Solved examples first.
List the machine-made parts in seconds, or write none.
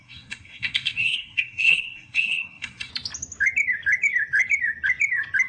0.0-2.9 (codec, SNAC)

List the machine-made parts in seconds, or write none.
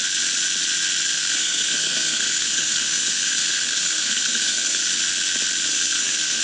1.1-4.9 (codec, SNAC); 5.7-6.4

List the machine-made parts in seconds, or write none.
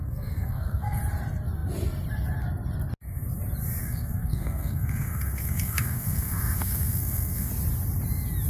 0.0-1.0 (codec, SNAC); 3.8-7.5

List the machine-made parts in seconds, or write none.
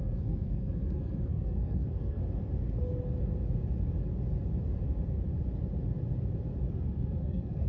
0.0-2.2 (codec, SNAC); 6.7-7.7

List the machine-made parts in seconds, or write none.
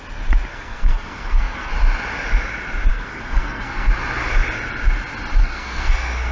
0.5-1.7 (codec, SNAC); 2.9-3.9; 5.4-6.3